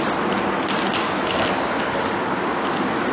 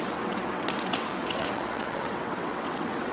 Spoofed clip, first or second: second